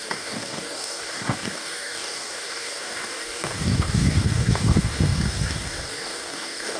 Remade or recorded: remade